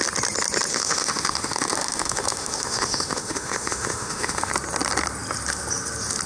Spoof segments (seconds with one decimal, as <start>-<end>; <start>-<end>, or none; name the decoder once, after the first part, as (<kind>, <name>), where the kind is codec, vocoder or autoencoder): 0.7-4.5 (autoencoder, DAC-VAE)